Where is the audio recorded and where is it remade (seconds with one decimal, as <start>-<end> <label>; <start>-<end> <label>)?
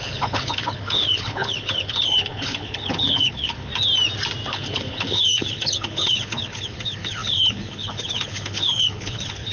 0.0-3.7 remade; 3.7-4.5 recorded; 4.5-9.5 remade